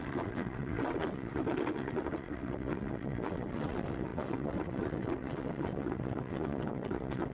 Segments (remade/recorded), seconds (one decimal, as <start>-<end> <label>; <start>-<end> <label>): 0.0-7.3 remade